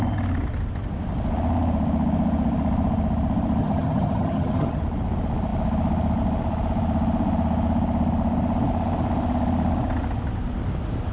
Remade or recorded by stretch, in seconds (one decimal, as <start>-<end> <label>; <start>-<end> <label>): 0.0-3.6 recorded; 3.6-4.8 remade; 4.8-11.1 recorded